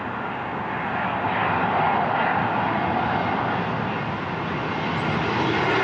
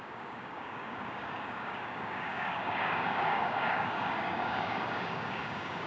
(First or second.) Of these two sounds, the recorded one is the first